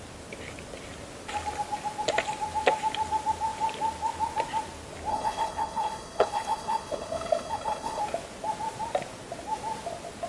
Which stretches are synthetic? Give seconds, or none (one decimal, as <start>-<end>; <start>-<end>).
5.1-8.0